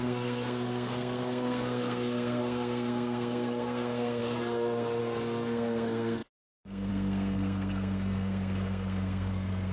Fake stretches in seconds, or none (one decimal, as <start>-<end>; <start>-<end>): 0.0-9.7